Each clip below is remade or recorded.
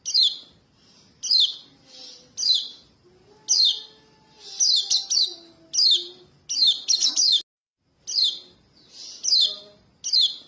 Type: recorded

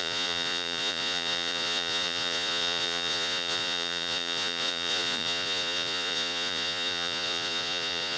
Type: remade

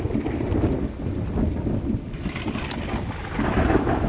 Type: recorded